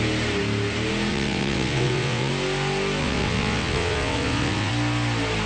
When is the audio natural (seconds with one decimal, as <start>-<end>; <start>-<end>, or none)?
0.0-1.1; 2.3-3.0; 4.7-5.5